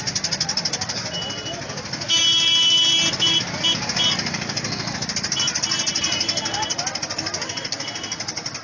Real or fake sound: real